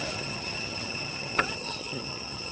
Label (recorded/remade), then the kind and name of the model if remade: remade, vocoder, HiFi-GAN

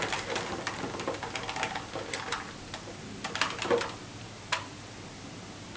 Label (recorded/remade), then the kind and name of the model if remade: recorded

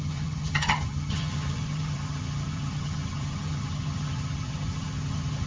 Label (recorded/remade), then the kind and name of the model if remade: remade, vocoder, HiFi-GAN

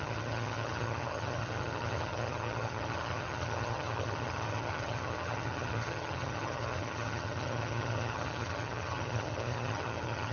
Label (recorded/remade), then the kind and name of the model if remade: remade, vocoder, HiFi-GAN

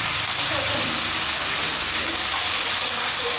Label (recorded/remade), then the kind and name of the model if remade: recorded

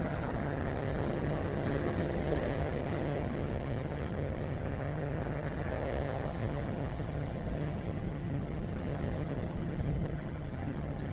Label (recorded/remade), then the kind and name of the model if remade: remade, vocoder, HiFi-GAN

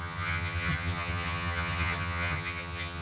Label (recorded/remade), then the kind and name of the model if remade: remade, vocoder, HiFi-GAN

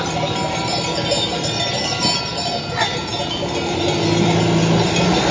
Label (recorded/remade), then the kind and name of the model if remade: recorded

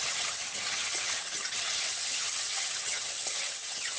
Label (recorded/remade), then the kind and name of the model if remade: remade, vocoder, HiFi-GAN